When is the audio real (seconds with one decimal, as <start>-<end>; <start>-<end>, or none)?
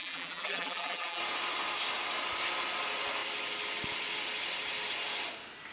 1.2-5.7